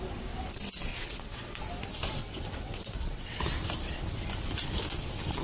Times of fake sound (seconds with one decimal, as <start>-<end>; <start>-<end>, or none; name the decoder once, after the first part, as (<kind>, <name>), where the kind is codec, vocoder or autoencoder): 0.9-1.6 (vocoder, WaveNeXt); 2.2-3.4